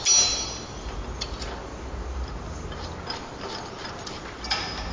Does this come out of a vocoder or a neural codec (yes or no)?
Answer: no